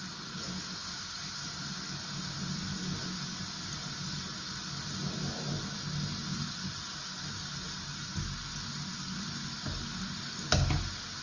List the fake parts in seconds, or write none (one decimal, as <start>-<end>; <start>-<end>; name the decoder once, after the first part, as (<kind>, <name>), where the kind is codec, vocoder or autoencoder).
none